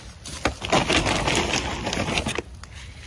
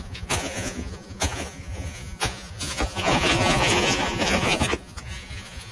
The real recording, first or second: first